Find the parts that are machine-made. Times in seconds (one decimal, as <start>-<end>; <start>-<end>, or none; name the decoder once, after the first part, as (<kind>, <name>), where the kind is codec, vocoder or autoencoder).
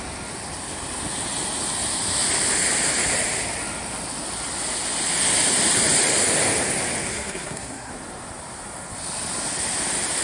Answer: 7.1-7.9 (codec, SNAC)